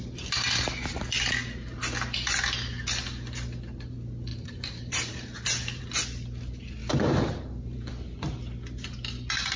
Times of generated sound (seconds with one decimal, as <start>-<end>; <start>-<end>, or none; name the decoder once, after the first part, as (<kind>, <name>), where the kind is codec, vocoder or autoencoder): 4.3-5.8 (vocoder, BigVGAN v2); 6.8-7.9